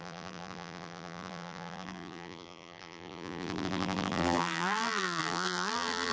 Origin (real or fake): fake